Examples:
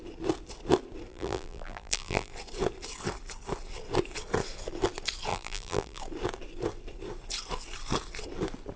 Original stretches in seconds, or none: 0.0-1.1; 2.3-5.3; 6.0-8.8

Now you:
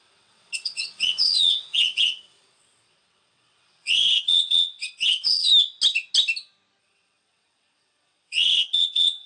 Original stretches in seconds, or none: 5.5-6.8

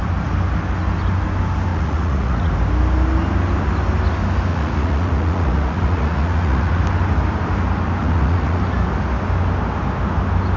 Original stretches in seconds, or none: 0.0-1.7; 2.5-4.5; 6.8-8.0; 8.6-10.6

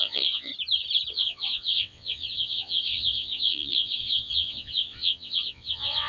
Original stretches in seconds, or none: 0.5-1.1

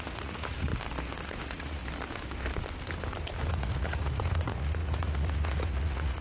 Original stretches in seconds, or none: 0.7-1.2; 1.8-3.5

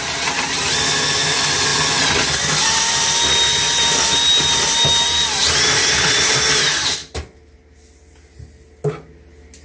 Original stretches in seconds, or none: 0.0-9.6

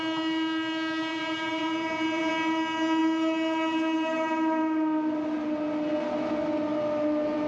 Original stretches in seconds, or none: 0.0-1.1; 2.3-7.5